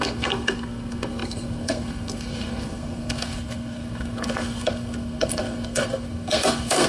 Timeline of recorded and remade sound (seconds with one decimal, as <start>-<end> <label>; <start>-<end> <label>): 0.0-6.9 remade